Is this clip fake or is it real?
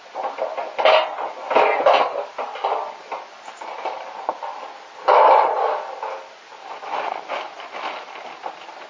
real